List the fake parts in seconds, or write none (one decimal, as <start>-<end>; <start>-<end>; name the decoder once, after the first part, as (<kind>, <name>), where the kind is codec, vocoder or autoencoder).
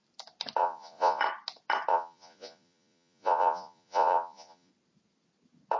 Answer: 0.6-1.2 (vocoder, Vocos); 1.9-4.7